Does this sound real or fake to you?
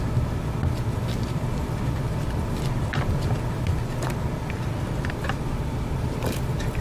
fake